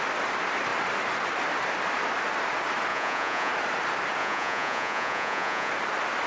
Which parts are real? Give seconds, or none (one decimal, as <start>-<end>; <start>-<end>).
0.0-2.9; 3.5-4.2; 5.7-6.3